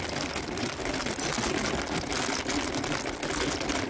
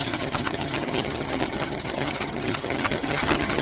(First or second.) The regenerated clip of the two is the second